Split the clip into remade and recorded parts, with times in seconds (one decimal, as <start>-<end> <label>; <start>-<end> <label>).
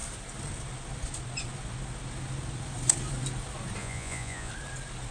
0.0-3.8 recorded; 3.8-4.5 remade; 4.5-5.1 recorded